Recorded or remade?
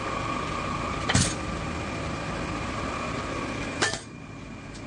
recorded